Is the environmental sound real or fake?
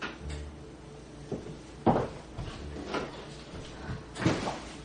real